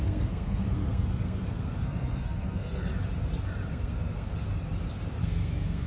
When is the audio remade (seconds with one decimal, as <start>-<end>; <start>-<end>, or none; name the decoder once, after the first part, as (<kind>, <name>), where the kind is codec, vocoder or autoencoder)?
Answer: 0.0-2.9 (codec, SNAC); 3.7-4.3; 5.2-5.9